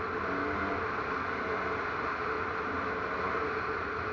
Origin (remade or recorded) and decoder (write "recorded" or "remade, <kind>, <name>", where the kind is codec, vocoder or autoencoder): recorded